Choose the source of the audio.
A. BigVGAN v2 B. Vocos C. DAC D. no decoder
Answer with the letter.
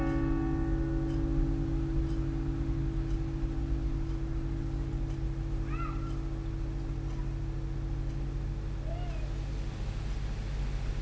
D